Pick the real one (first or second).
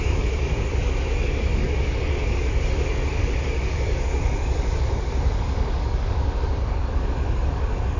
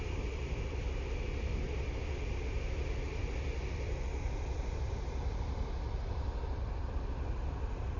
second